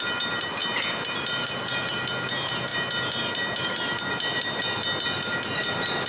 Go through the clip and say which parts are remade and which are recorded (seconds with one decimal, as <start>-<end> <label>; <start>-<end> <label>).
0.0-6.1 remade